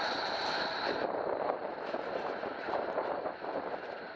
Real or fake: fake